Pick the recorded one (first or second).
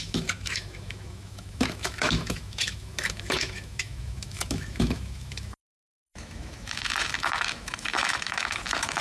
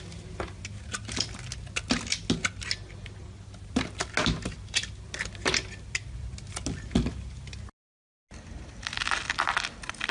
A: second